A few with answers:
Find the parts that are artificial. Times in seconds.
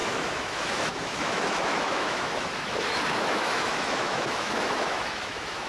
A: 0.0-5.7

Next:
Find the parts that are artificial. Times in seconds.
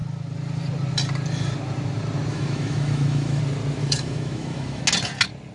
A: 2.3-3.4; 3.8-4.8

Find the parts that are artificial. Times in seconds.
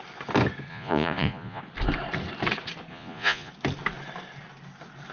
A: 0.7-1.6; 2.9-3.5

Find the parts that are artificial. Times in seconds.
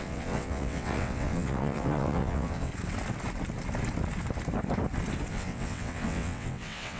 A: 0.0-2.7; 5.3-7.0